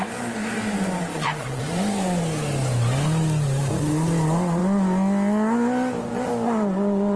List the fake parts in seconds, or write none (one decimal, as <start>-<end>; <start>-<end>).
1.1-1.6